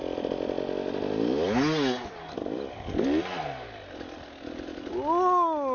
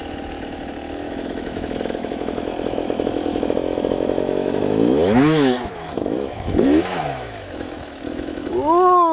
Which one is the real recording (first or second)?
first